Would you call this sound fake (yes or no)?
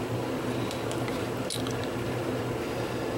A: no